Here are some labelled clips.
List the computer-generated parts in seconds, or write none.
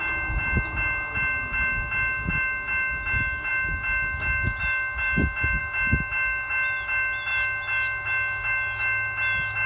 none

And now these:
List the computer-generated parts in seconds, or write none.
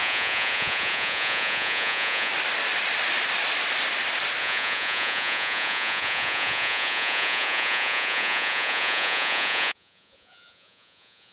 0.0-2.3 (vocoder, Vocos); 4.4-11.3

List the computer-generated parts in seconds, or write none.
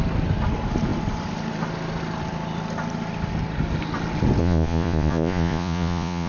4.4-6.3 (vocoder, Vocos)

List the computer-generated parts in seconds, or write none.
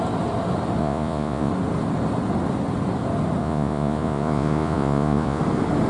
0.8-1.5 (vocoder, Vocos); 3.4-5.4